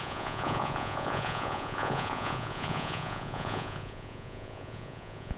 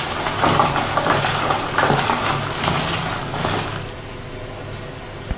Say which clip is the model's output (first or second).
first